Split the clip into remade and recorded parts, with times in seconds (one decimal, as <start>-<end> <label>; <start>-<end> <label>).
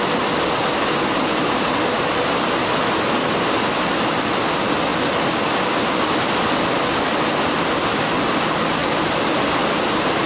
0.0-10.3 recorded